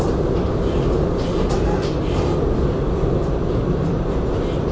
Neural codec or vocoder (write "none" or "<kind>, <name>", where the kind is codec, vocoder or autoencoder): none